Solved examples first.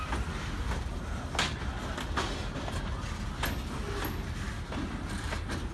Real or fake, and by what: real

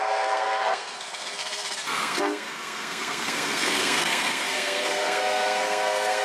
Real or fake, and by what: fake, codec, SNAC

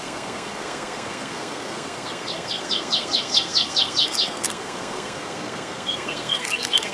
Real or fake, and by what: fake, codec, SNAC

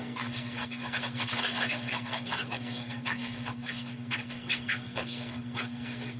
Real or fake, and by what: fake, codec, SNAC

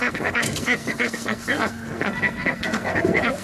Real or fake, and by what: fake, codec, SNAC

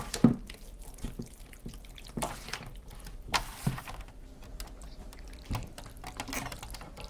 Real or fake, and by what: real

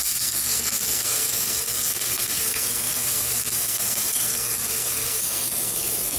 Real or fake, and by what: fake, codec, SNAC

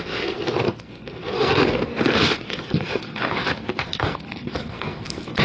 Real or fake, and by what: fake, codec, SNAC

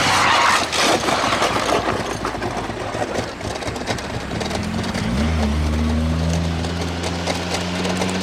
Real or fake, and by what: real